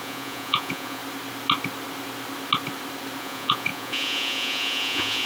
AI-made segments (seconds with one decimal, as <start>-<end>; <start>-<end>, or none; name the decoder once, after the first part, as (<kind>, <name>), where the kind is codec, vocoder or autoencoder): 0.0-1.0 (vocoder, Vocos); 3.2-5.3